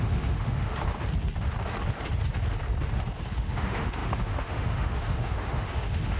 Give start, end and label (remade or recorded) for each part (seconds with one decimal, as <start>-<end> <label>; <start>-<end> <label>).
0.0-0.7 remade; 0.7-3.3 recorded; 3.3-6.2 remade